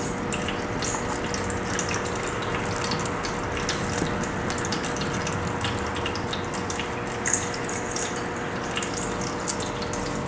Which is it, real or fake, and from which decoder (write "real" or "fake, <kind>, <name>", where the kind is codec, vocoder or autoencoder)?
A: real